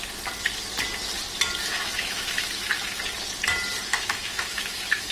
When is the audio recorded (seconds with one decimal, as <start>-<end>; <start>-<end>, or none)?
0.0-1.7; 3.0-3.9